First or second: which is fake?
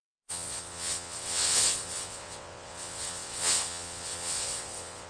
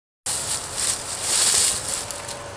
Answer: first